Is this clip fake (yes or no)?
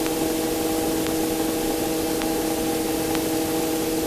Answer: no